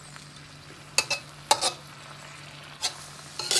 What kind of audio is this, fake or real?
real